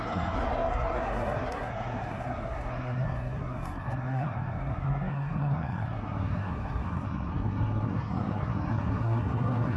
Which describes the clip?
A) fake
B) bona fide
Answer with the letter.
A